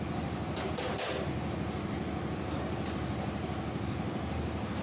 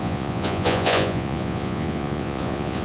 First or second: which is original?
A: first